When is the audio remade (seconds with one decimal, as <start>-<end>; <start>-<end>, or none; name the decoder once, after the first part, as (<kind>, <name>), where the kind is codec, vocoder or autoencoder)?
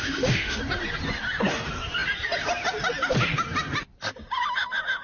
0.0-0.6 (autoencoder, DAC-VAE)